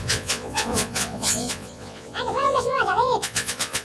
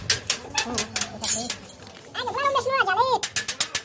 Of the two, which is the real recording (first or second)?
second